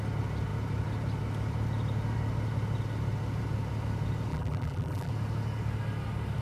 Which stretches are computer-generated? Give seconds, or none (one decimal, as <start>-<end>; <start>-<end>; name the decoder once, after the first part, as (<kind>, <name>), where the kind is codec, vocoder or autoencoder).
4.3-5.1 (vocoder, BigVGAN v2)